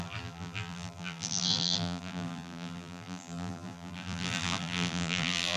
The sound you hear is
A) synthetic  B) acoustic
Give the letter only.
A